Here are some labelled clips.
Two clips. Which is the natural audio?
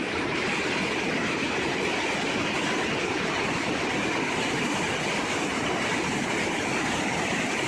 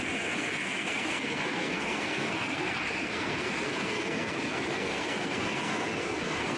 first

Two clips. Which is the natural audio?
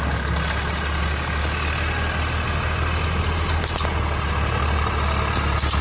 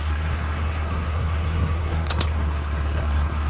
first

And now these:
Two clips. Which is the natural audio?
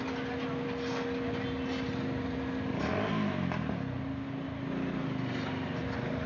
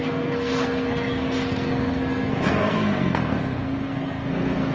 first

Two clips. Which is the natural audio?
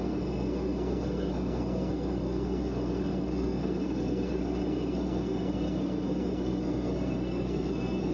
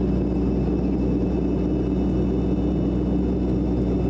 second